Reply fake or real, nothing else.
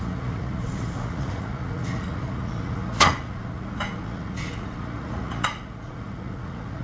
fake